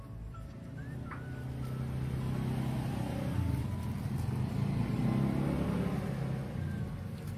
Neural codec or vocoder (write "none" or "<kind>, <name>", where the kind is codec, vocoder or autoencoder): none